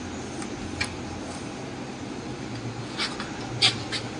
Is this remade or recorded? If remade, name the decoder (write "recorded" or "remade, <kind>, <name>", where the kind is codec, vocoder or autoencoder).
recorded